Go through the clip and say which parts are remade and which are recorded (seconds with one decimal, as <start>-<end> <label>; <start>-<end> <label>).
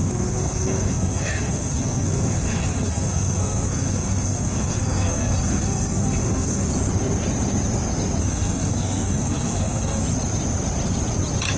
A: 0.0-6.7 remade; 6.7-8.2 recorded; 8.2-10.0 remade; 10.0-11.6 recorded